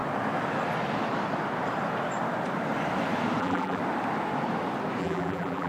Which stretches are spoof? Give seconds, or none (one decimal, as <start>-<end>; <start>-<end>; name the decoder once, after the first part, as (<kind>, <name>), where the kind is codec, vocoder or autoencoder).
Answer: 3.4-3.8 (vocoder, BigVGAN v2); 5.0-5.7